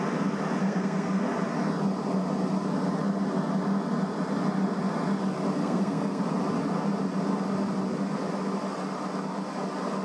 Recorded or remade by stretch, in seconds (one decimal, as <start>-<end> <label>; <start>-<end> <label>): 0.0-0.6 recorded; 0.6-1.2 remade; 1.2-5.6 recorded; 5.6-6.2 remade; 6.2-10.0 recorded